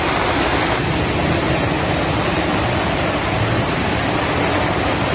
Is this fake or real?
real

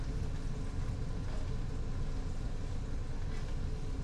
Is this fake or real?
real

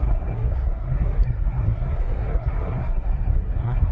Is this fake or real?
fake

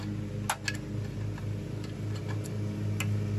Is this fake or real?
real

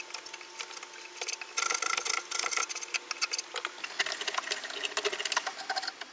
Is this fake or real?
real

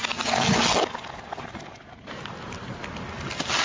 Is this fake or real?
real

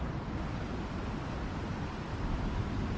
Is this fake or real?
real